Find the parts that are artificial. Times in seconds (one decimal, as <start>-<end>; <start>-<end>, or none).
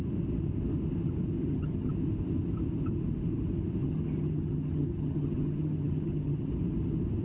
1.4-1.9; 3.8-6.5